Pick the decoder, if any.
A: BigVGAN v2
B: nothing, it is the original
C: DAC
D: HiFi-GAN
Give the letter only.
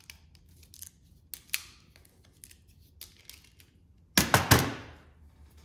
B